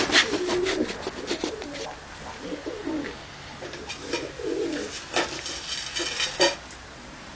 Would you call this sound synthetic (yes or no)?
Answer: no